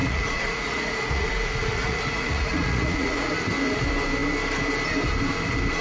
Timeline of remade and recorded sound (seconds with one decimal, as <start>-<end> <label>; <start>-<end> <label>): 0.0-3.3 remade; 3.3-5.8 recorded